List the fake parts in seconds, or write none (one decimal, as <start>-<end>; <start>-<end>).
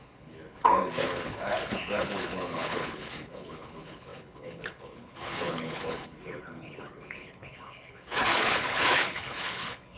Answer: 0.0-10.0